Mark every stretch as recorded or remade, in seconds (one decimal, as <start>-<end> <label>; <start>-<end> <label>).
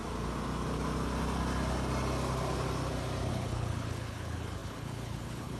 0.0-3.3 recorded; 3.3-5.6 remade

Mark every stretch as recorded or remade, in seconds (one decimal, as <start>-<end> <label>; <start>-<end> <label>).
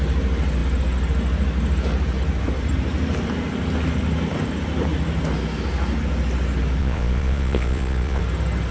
0.0-6.8 recorded; 6.8-8.2 remade; 8.2-8.7 recorded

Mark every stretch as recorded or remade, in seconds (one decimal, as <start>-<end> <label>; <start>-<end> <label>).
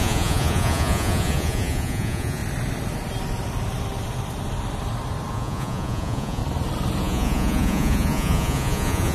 0.0-2.4 remade; 2.4-5.3 recorded; 5.3-6.4 remade; 6.4-7.0 recorded; 7.0-9.1 remade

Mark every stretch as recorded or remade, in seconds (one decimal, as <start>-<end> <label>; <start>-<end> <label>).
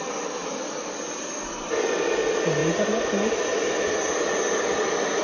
0.0-5.2 recorded